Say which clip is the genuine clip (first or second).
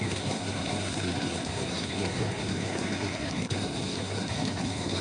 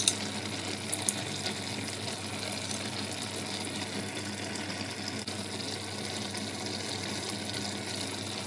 second